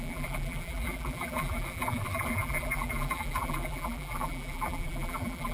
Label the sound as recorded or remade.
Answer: remade